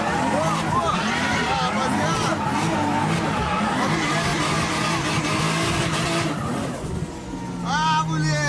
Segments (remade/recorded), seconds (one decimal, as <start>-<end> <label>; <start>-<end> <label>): 0.0-8.5 recorded